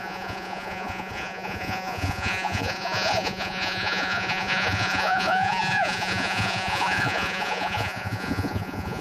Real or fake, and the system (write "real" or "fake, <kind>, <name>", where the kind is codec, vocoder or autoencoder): fake, vocoder, Vocos